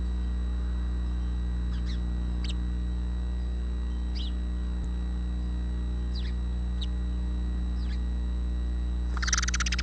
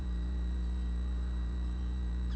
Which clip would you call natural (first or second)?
first